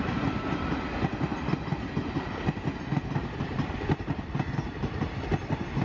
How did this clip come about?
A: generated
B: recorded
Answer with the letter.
B